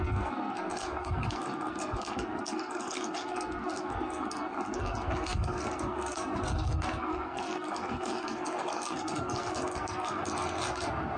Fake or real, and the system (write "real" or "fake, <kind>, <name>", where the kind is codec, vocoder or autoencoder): fake, codec, SNAC